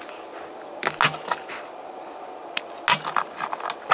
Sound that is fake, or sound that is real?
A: real